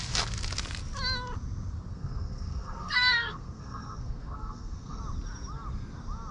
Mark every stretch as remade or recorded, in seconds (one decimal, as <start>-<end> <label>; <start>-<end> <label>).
0.0-1.9 recorded; 1.9-5.0 remade; 5.0-6.3 recorded